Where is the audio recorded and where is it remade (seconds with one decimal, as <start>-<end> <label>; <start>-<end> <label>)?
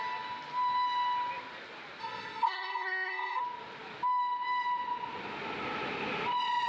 0.0-2.0 recorded; 2.0-3.4 remade; 3.4-6.7 recorded